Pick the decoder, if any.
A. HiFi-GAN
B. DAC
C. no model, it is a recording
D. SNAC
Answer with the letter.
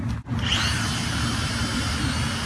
C